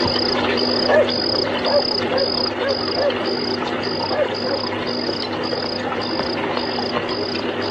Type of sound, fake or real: real